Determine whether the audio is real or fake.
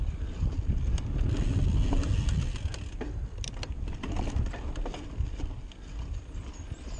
real